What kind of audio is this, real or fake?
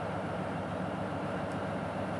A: real